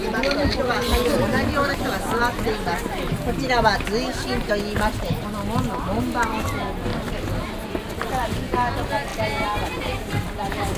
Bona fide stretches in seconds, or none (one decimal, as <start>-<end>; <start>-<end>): 0.0-10.8